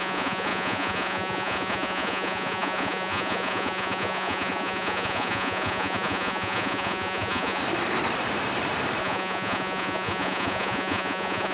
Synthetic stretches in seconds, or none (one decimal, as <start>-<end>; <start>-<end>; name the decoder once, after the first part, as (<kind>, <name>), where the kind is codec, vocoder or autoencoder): 0.0-7.6 (vocoder, Vocos); 9.0-11.5